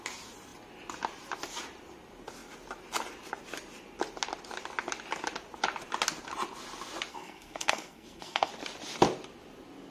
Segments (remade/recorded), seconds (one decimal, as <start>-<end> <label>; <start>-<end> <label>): 0.0-7.1 recorded; 7.1-8.5 remade; 8.5-9.9 recorded